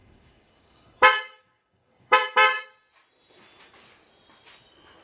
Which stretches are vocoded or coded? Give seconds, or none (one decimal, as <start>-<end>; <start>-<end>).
0.0-2.7